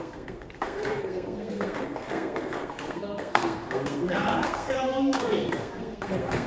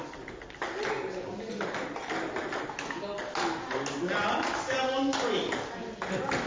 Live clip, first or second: second